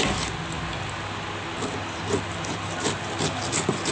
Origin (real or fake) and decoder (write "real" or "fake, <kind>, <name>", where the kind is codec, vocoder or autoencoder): real